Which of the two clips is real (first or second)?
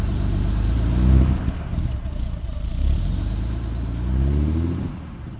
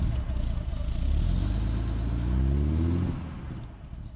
second